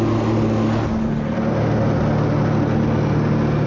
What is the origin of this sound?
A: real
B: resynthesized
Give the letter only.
A